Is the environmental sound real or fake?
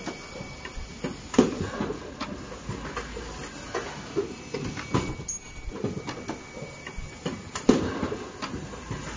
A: real